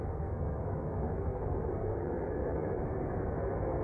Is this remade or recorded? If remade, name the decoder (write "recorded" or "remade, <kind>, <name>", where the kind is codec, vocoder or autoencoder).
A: remade, codec, SNAC